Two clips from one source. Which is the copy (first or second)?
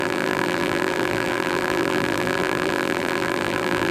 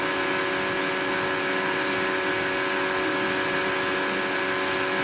first